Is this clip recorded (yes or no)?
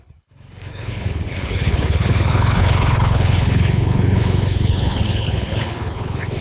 no